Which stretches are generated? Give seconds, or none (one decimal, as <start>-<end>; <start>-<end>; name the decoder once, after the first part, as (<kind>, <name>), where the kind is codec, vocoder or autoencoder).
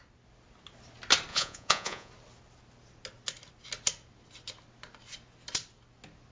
1.3-2.1 (vocoder, Vocos)